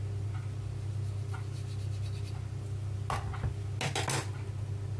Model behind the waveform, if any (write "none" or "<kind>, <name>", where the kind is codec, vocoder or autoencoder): none